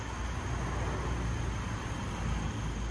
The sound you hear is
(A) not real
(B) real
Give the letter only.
B